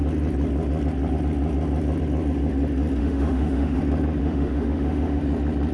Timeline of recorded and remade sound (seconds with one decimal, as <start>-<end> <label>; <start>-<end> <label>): 0.0-3.0 recorded; 3.0-3.8 remade; 3.8-4.2 recorded; 4.2-5.2 remade; 5.2-5.7 recorded